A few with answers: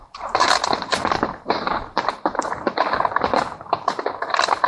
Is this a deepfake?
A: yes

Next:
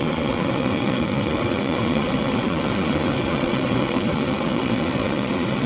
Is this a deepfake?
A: yes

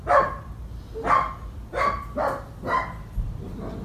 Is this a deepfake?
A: no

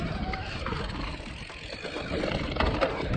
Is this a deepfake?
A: no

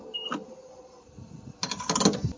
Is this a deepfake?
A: no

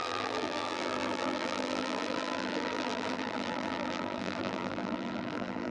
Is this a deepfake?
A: yes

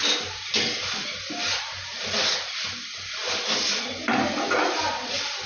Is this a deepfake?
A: no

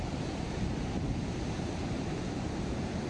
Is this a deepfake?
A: yes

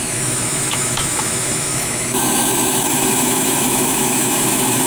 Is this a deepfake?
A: yes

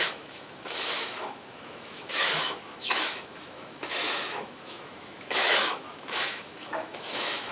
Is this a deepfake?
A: yes